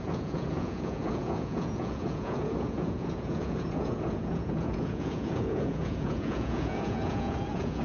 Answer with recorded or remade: remade